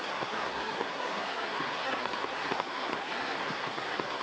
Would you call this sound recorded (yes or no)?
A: no